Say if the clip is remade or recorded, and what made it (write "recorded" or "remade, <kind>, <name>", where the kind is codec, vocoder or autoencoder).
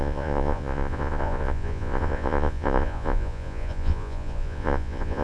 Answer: remade, vocoder, Vocos